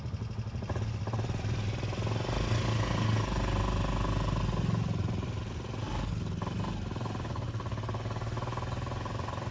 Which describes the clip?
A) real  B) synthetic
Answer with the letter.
A